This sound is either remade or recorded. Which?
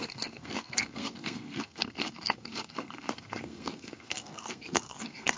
remade